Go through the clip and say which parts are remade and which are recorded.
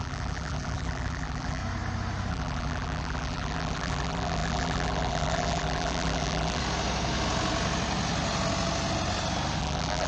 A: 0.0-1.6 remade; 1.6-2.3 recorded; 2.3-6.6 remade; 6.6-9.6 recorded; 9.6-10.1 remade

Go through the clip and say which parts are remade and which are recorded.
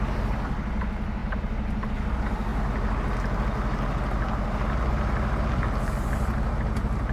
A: 0.0-1.2 recorded; 1.2-1.9 remade; 1.9-7.1 recorded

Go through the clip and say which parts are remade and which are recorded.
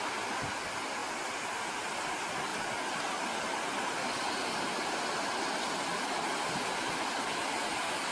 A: 0.0-2.5 remade; 2.5-5.7 recorded; 5.7-8.1 remade